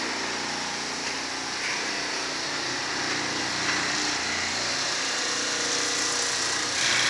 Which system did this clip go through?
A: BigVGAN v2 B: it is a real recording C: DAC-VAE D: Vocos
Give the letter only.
B